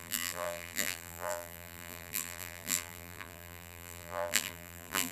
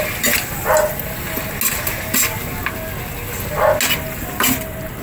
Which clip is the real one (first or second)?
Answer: second